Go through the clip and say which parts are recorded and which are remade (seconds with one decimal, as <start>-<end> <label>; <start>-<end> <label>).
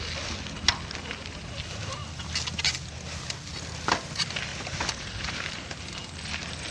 0.0-4.5 recorded; 4.5-5.9 remade; 5.9-6.7 recorded